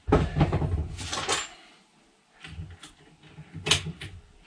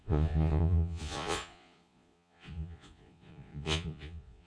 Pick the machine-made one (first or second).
second